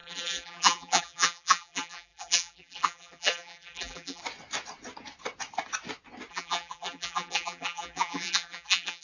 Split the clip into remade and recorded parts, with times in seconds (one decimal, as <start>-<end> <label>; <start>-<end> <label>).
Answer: 0.0-4.2 remade; 4.2-6.3 recorded; 6.3-9.0 remade